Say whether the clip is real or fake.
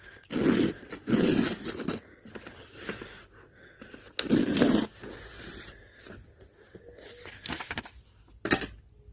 real